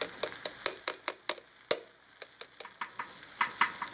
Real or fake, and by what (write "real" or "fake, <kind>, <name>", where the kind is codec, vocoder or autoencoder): real